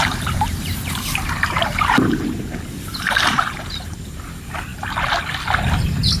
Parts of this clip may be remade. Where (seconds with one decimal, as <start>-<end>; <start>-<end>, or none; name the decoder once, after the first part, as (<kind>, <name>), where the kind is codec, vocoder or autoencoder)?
0.0-4.7 (vocoder, BigVGAN v2)